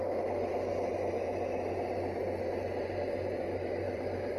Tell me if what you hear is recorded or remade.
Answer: recorded